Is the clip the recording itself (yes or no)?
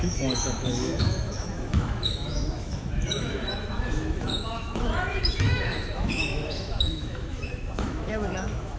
no